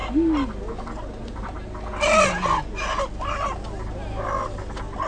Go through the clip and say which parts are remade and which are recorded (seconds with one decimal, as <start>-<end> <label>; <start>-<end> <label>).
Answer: 0.0-5.1 recorded